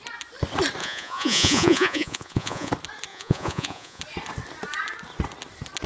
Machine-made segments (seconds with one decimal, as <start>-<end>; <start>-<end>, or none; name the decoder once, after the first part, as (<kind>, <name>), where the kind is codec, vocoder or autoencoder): 0.8-2.7 (vocoder, Vocos); 3.1-4.0